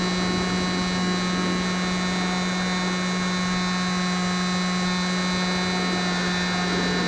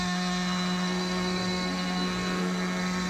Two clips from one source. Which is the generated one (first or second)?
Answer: second